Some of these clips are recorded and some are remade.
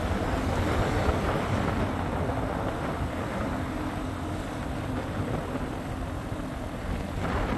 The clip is recorded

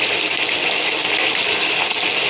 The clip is recorded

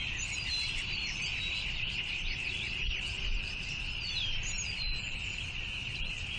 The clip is recorded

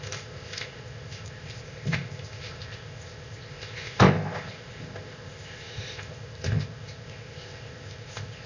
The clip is remade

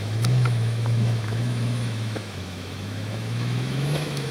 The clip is remade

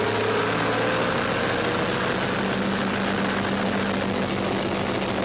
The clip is recorded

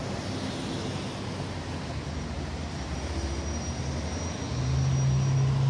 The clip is recorded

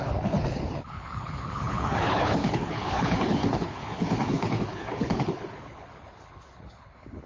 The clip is remade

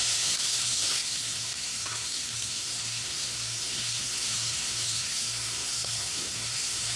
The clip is remade